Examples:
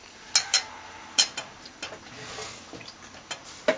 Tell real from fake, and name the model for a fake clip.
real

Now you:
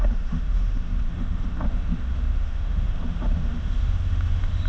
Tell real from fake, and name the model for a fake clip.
fake, autoencoder, DAC-VAE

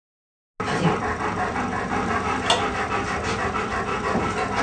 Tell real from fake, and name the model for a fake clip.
real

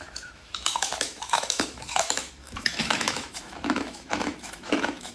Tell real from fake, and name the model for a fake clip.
fake, autoencoder, DAC-VAE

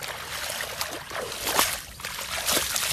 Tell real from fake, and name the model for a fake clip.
real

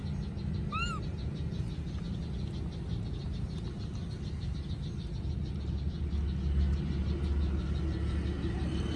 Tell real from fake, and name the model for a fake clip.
real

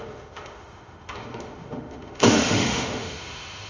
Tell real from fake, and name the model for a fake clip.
fake, autoencoder, DAC-VAE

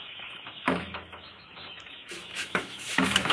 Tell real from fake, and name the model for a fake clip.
fake, autoencoder, DAC-VAE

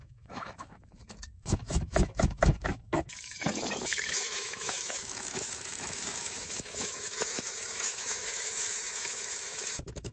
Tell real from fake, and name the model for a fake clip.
fake, autoencoder, DAC-VAE